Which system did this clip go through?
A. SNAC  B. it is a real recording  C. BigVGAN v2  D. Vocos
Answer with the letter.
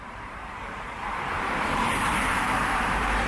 C